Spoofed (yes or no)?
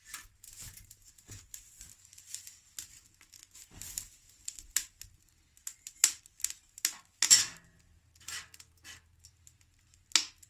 no